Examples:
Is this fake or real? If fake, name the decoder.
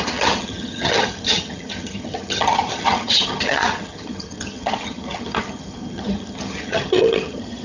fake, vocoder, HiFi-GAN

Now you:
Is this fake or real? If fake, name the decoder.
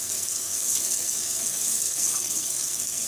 fake, codec, SNAC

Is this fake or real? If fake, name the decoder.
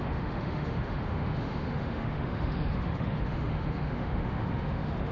fake, autoencoder, DAC-VAE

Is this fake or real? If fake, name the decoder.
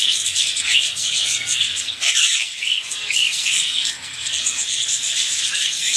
fake, codec, SNAC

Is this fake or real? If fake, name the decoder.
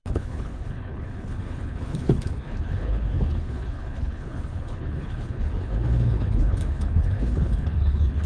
fake, codec, HILCodec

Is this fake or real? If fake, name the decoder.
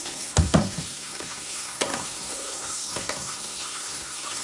fake, codec, SNAC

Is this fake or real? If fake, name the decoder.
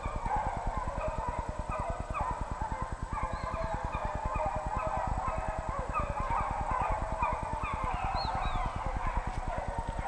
real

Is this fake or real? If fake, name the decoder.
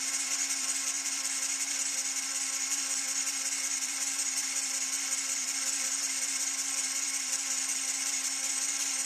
fake, vocoder, BigVGAN v2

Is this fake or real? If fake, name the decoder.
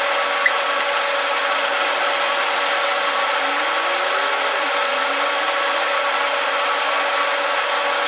real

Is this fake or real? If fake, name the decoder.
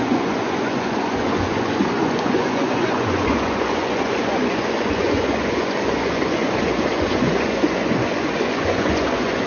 fake, vocoder, Vocos